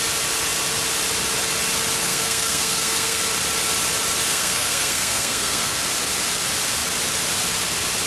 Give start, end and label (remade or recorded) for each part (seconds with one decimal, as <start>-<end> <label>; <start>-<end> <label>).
0.0-2.0 recorded; 2.0-3.2 remade; 3.2-4.3 recorded; 4.3-5.8 remade; 5.8-8.1 recorded